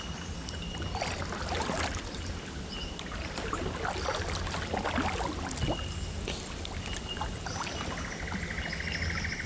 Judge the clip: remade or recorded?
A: recorded